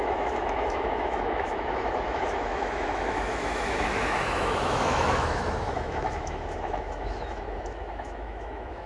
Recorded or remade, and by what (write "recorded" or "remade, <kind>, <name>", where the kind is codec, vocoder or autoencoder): remade, autoencoder, DAC-VAE